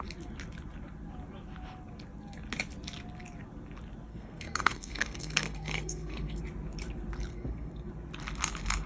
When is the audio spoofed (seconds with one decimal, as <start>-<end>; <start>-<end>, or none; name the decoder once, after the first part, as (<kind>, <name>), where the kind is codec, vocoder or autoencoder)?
4.1-6.4 (codec, SNAC); 7.3-7.9